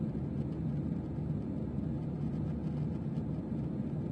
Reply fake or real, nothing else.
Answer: real